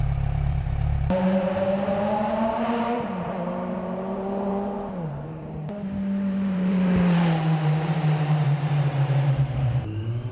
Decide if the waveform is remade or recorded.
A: remade